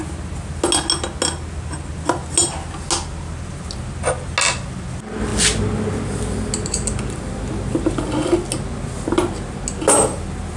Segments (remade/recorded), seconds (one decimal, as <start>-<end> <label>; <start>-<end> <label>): 0.0-10.6 recorded